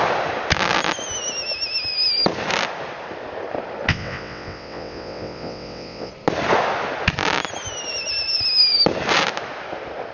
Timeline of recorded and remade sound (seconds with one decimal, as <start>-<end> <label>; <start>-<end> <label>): 0.0-3.9 recorded; 3.9-6.1 remade; 6.1-10.1 recorded